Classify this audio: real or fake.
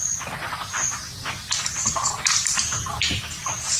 real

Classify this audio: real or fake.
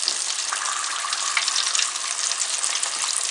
real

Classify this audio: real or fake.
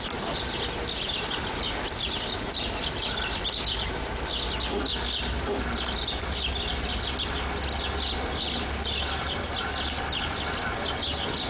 real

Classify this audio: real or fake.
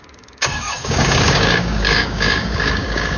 fake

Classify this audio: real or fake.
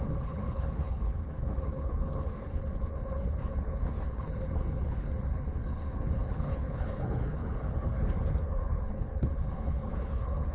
fake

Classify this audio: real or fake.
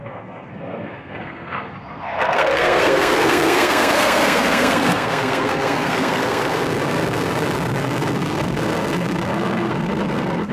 fake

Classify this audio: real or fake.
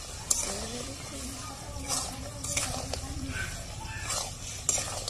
real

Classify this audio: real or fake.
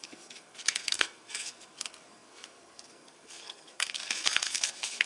fake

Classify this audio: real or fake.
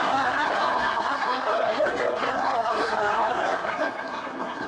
fake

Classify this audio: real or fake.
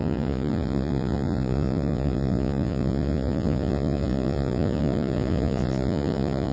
fake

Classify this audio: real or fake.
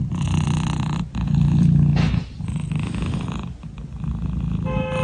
real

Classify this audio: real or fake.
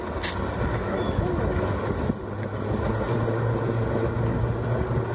real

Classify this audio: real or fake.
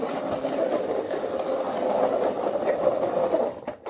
real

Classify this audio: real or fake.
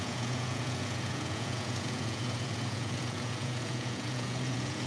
fake